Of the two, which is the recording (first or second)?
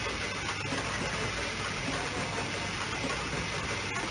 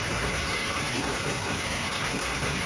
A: first